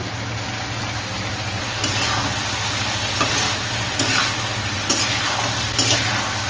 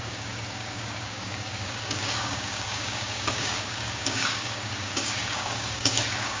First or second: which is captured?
first